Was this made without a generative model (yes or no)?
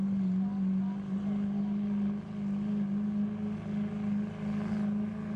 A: yes